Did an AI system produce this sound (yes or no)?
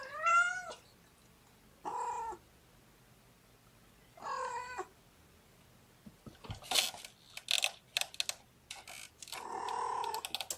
no